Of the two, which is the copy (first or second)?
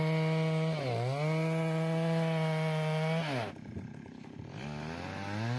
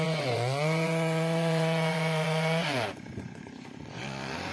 second